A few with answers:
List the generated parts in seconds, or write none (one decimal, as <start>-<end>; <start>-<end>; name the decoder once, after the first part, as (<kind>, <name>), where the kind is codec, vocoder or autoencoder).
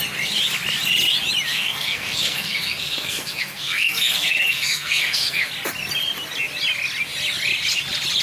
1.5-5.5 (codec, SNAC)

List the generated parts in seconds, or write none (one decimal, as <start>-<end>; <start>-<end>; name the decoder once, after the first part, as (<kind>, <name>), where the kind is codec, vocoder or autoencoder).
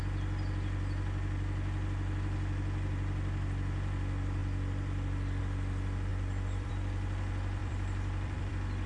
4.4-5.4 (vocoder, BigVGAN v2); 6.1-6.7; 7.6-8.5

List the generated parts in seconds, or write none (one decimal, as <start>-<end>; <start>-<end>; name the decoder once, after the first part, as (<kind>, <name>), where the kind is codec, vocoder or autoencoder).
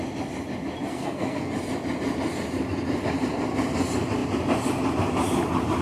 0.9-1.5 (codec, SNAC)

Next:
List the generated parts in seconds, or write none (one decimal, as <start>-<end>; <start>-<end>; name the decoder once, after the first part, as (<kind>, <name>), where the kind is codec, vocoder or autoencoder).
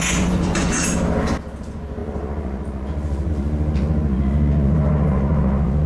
0.0-0.8 (vocoder, Vocos); 1.6-5.9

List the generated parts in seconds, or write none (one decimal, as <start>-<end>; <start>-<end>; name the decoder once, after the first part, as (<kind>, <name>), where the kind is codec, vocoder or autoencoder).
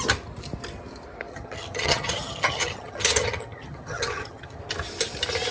1.3-4.6 (vocoder, HiFi-GAN)